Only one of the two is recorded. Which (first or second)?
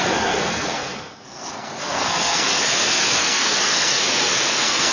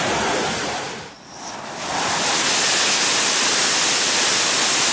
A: second